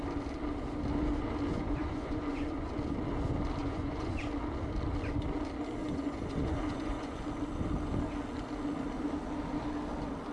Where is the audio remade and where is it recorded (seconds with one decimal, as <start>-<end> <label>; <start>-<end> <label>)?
0.0-1.5 recorded; 1.5-2.7 remade; 2.7-3.6 recorded; 3.6-4.2 remade; 4.2-5.8 recorded; 5.8-7.2 remade; 7.2-10.3 recorded